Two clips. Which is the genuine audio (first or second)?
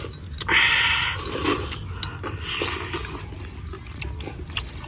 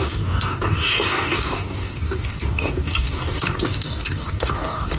first